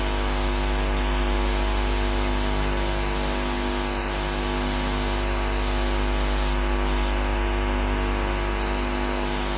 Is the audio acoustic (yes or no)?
yes